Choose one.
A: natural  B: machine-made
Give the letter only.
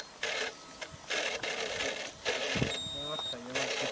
A